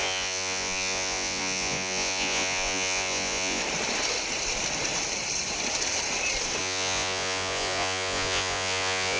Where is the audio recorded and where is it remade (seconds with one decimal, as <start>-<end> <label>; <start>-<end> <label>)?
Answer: 0.0-3.6 remade; 3.6-6.6 recorded; 6.6-9.2 remade